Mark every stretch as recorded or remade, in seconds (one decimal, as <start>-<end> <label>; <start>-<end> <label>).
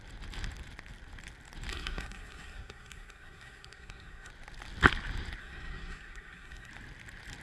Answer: 0.0-1.7 recorded; 1.7-4.3 remade; 4.3-5.4 recorded; 5.4-6.7 remade; 6.7-7.4 recorded